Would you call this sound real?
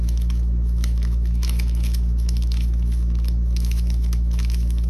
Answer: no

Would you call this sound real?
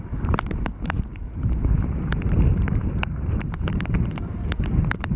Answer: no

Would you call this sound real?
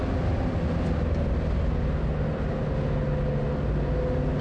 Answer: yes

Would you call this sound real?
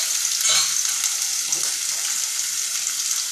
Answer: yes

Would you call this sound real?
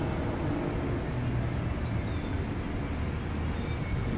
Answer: yes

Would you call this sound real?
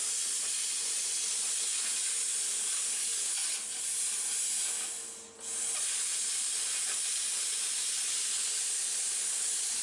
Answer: yes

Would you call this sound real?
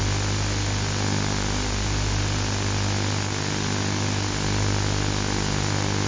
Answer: yes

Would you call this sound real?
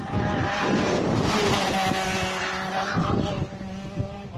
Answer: yes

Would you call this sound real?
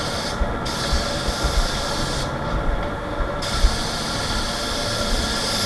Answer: yes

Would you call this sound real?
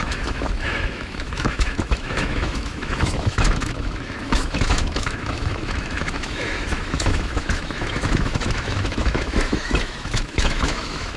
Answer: no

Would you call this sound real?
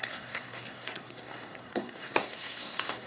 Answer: no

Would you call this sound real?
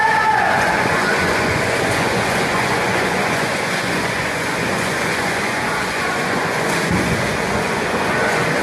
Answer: no